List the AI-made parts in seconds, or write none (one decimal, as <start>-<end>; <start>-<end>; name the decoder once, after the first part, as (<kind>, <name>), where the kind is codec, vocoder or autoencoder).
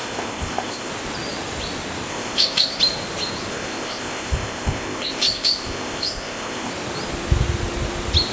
0.0-0.9 (codec, ZipCodec); 2.1-2.8; 3.5-6.7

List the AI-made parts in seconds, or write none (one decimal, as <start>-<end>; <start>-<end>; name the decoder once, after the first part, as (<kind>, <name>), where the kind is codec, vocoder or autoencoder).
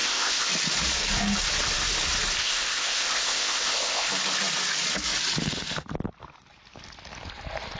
0.0-0.5 (codec, ZipCodec); 2.4-4.1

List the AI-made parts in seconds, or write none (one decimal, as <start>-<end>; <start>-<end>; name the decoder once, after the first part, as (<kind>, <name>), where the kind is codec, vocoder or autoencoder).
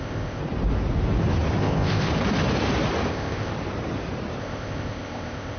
0.0-0.4 (codec, ZipCodec); 1.6-2.1; 3.1-3.5; 4.4-5.6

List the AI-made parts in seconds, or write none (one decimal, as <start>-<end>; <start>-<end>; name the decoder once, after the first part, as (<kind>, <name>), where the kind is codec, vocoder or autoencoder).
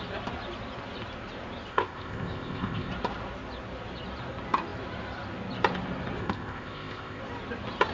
1.7-2.9 (codec, ZipCodec); 6.2-7.2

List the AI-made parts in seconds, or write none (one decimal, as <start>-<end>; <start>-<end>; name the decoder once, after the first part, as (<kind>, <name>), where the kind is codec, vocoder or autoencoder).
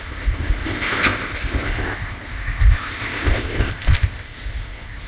0.0-5.1 (codec, ZipCodec)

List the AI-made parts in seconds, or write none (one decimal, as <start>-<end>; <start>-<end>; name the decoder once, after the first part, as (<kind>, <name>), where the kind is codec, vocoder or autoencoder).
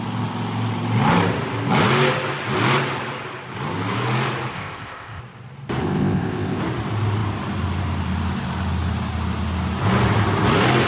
4.5-5.2 (codec, ZipCodec); 5.8-6.6